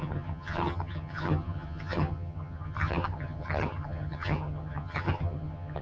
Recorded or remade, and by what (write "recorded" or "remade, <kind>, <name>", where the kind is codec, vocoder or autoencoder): remade, vocoder, HiFi-GAN